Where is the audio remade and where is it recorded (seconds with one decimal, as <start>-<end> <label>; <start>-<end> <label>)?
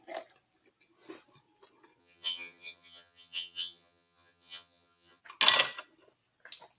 0.0-2.0 recorded; 2.0-5.2 remade; 5.2-6.8 recorded